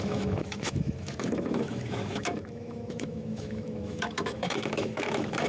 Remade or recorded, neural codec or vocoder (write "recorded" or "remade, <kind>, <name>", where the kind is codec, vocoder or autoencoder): remade, autoencoder, DAC-VAE